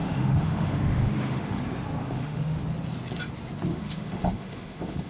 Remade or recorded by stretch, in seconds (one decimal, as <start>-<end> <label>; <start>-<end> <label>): 0.0-1.6 remade; 1.6-2.0 recorded; 2.0-2.6 remade; 2.6-3.7 recorded; 3.7-5.1 remade